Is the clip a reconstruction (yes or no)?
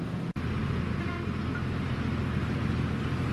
no